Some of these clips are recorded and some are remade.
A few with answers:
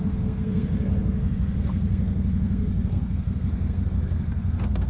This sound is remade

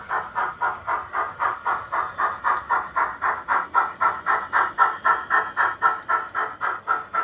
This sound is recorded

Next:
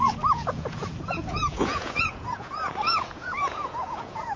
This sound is remade